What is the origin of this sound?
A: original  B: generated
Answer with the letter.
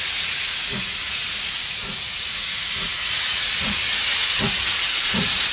B